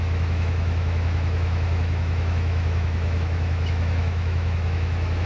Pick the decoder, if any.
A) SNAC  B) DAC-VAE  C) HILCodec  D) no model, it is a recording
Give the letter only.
B